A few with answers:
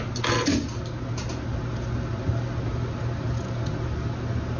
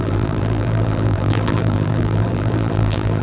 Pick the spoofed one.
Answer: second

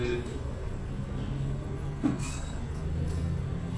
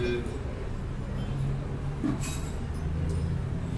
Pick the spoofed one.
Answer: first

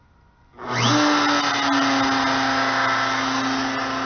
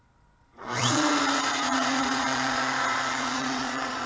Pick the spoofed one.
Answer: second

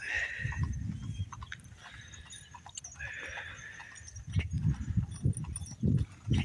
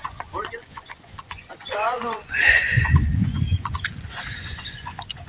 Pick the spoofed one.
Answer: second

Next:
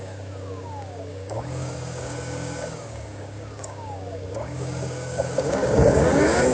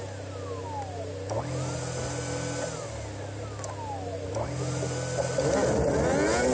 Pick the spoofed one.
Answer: first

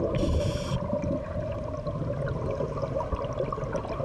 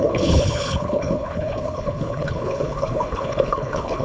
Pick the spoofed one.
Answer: second